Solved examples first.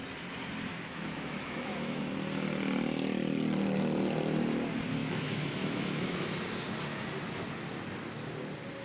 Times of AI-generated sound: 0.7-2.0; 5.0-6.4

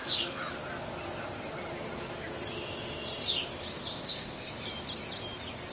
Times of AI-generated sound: 3.9-4.5